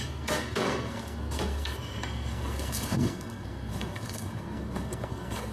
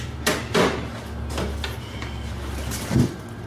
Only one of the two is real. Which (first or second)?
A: second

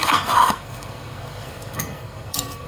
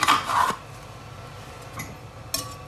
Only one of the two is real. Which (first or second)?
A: second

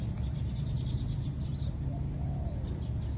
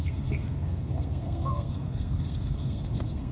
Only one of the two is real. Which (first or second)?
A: first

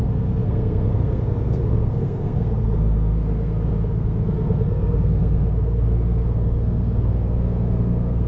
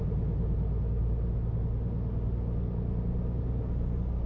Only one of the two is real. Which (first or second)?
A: second